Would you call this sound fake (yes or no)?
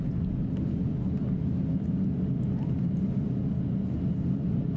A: no